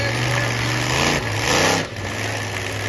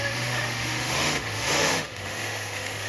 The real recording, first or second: first